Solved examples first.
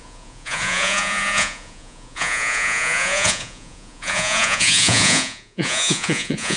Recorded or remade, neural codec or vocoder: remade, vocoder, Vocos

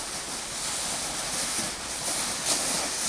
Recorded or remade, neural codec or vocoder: recorded